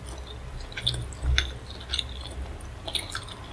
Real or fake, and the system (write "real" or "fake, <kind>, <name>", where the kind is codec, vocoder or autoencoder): real